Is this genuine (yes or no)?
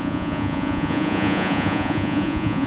no